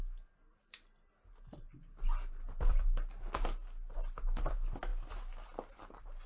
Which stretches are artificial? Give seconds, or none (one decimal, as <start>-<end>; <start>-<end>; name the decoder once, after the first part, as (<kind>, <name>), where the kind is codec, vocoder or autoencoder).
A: none